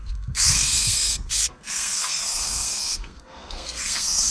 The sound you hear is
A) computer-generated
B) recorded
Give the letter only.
A